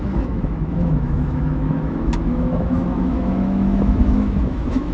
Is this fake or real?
fake